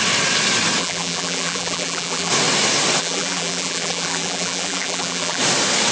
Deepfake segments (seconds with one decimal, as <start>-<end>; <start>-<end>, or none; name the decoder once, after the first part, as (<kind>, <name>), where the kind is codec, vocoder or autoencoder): 0.8-2.3 (vocoder, BigVGAN v2); 3.0-5.4